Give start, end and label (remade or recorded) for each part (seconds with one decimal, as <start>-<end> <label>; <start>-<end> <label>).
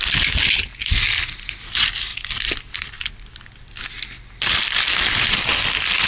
0.0-3.6 recorded; 3.6-4.9 remade; 4.9-6.1 recorded